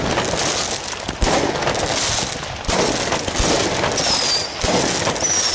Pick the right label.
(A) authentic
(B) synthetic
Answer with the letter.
A